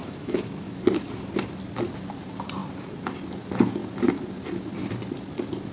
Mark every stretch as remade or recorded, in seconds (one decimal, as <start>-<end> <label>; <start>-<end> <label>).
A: 0.0-0.8 remade; 0.8-5.7 recorded